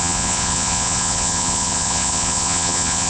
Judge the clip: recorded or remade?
remade